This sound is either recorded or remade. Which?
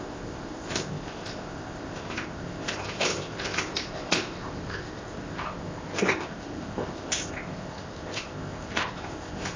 remade